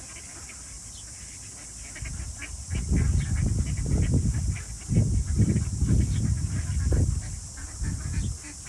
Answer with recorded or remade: recorded